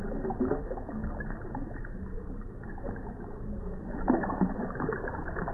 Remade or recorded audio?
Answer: recorded